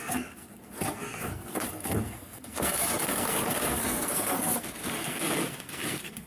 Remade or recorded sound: remade